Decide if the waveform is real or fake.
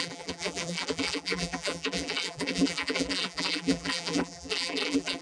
fake